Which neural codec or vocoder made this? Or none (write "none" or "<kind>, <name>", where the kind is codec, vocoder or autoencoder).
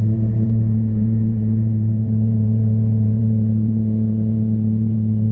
vocoder, BigVGAN v2